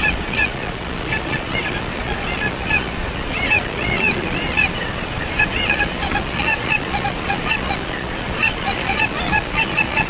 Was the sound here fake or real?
fake